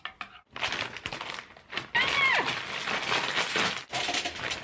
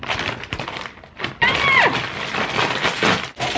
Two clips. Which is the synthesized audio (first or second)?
second